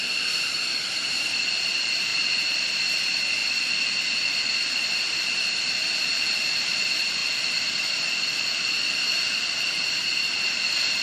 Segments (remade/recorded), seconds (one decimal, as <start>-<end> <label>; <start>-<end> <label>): 0.0-11.0 remade